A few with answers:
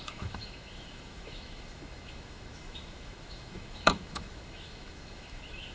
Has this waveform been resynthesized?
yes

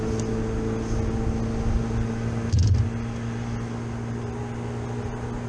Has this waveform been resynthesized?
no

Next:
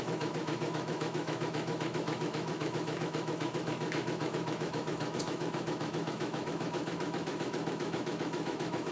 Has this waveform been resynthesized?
yes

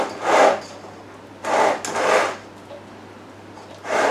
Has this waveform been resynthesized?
no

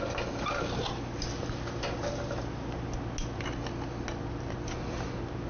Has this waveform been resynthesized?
no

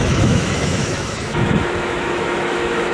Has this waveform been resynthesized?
yes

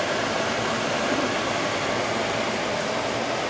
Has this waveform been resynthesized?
no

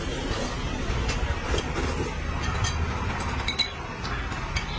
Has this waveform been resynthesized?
no